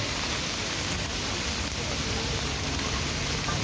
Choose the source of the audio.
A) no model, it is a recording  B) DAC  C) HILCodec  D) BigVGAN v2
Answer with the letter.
A